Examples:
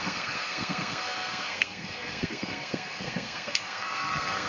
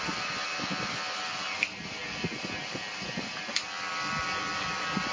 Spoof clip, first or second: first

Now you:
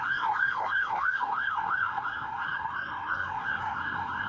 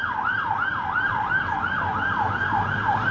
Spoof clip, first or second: first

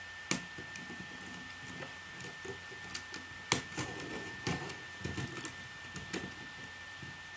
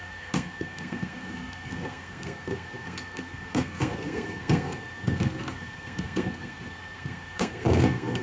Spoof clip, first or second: second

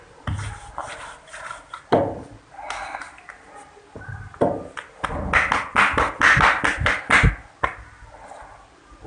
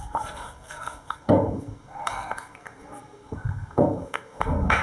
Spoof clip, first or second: second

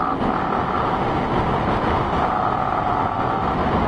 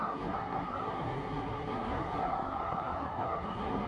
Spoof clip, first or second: second